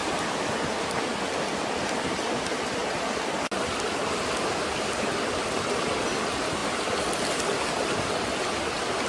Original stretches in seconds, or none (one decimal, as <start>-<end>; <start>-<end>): 0.0-9.1